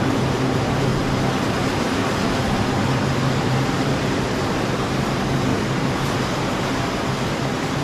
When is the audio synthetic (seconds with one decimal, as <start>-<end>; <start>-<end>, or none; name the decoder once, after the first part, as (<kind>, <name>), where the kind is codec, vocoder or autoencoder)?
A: 0.0-0.9 (vocoder, BigVGAN v2); 3.4-7.8